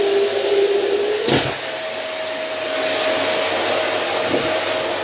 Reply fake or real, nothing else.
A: real